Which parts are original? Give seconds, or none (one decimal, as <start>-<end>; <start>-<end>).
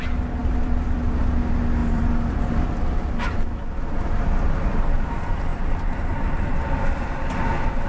0.0-0.4; 1.2-1.8; 2.7-5.5; 6.2-7.9